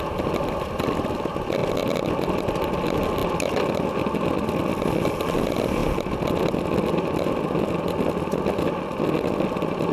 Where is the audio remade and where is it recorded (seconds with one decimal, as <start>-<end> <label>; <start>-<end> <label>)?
0.0-9.9 recorded